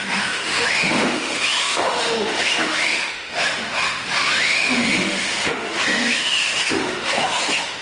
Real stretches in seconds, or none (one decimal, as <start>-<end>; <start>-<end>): none